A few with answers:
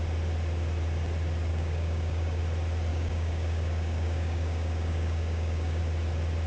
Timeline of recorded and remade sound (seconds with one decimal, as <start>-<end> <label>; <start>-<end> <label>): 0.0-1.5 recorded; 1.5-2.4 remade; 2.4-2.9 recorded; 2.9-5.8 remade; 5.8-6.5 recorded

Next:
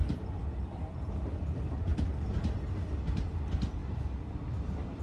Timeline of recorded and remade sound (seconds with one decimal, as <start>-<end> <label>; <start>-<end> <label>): 0.0-3.8 recorded; 3.8-4.5 remade; 4.5-5.0 recorded

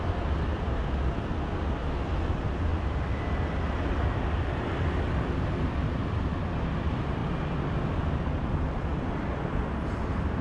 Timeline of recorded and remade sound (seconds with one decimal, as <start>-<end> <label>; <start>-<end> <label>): 0.0-10.4 recorded